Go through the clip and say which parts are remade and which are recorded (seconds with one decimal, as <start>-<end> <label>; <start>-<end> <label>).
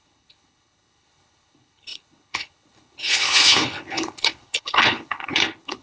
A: 0.0-5.8 remade